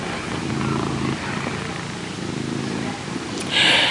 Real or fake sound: real